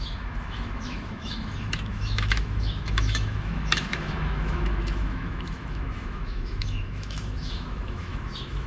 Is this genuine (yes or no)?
no